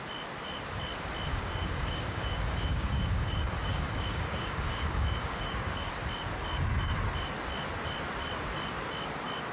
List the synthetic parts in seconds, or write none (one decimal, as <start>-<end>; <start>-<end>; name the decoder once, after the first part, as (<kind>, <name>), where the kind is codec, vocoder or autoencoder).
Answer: 1.3-5.9 (codec, DAC)